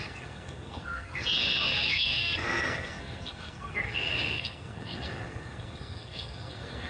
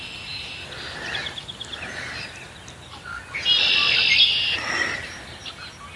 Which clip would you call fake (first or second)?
first